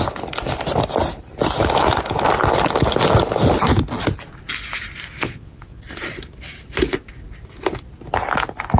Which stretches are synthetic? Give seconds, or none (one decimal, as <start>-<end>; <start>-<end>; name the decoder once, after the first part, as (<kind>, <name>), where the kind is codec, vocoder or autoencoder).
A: 5.2-5.8 (vocoder, Vocos)